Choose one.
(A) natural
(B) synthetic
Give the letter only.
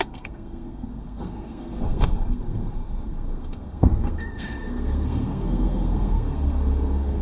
B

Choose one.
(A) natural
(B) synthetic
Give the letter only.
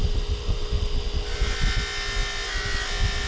A